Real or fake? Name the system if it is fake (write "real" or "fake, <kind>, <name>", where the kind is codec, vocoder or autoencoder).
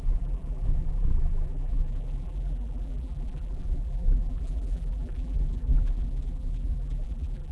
fake, vocoder, BigVGAN v2